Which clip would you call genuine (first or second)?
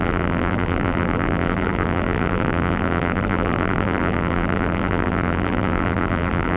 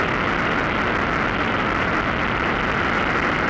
second